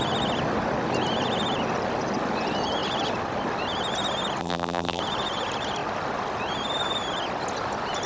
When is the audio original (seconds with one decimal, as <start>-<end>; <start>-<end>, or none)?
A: 0.0-4.4; 5.0-8.1